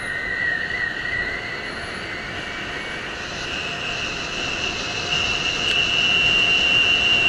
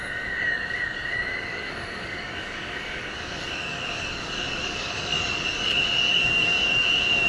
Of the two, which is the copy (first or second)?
second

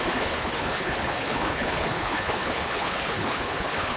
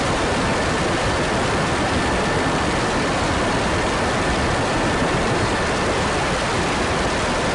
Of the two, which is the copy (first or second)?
first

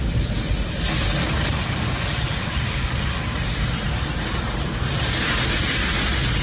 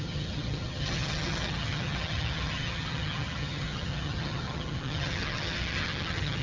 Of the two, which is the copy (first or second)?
second